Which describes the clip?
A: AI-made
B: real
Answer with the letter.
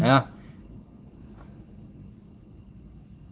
A